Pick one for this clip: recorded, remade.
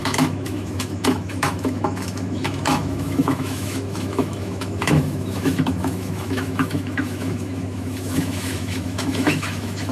remade